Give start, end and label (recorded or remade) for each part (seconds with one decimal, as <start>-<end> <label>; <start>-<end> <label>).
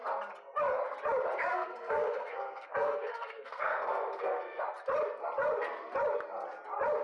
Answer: 0.0-1.5 recorded; 1.5-4.6 remade; 4.6-7.0 recorded